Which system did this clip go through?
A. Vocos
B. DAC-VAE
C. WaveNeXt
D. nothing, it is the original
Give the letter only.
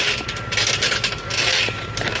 D